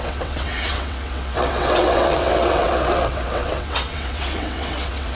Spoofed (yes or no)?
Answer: yes